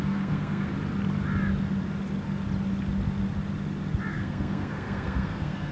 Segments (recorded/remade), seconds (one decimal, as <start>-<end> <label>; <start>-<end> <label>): 0.0-0.7 remade; 0.7-4.1 recorded; 4.1-5.7 remade